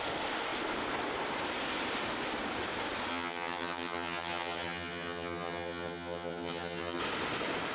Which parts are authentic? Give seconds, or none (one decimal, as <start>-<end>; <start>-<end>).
0.0-3.1; 7.0-7.7